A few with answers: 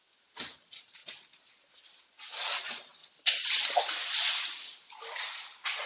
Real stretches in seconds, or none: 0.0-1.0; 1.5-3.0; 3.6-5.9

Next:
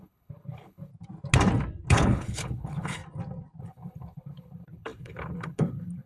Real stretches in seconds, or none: 0.9-1.9; 3.0-3.6

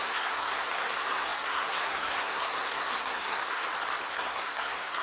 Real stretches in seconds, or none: 3.6-4.1